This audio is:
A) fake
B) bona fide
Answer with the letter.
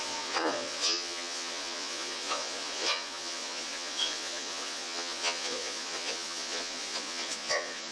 A